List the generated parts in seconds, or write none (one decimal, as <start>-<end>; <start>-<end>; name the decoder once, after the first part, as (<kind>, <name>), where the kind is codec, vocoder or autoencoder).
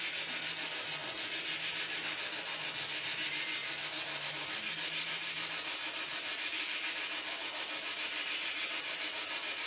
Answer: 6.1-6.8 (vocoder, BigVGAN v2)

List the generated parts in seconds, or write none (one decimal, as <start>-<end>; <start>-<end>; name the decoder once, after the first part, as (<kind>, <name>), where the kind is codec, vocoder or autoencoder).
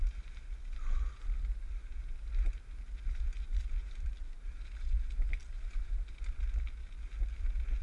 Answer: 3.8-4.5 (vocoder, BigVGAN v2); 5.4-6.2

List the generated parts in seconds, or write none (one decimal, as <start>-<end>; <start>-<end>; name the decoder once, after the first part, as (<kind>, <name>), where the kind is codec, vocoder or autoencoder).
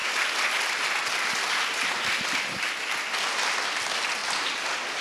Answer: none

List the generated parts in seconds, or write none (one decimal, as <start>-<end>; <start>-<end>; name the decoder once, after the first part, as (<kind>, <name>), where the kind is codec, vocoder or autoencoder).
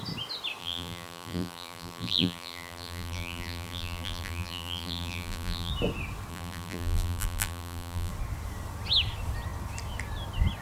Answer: 0.6-5.7 (vocoder, BigVGAN v2); 6.3-8.1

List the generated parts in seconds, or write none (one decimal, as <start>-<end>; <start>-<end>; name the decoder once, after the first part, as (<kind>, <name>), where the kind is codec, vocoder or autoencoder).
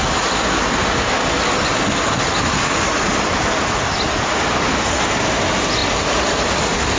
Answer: none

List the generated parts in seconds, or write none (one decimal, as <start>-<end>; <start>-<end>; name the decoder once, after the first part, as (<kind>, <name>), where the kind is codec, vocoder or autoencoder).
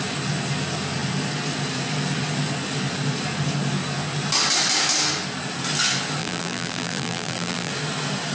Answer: 6.2-7.7 (vocoder, BigVGAN v2)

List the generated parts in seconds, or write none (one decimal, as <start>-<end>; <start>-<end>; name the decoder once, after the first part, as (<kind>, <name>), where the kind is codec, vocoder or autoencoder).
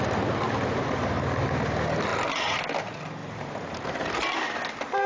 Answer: 3.2-4.1 (vocoder, BigVGAN v2)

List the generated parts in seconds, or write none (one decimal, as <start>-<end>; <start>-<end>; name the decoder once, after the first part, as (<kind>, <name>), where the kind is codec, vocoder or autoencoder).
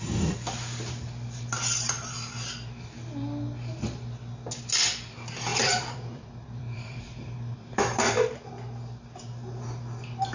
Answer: 5.5-8.5 (vocoder, BigVGAN v2)